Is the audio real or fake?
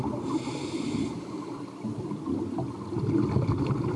fake